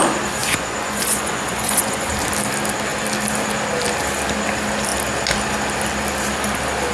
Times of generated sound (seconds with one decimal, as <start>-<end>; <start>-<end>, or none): 0.4-2.1

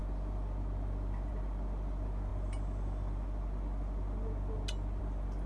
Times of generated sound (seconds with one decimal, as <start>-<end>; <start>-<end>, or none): none